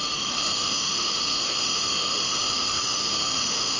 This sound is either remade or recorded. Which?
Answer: remade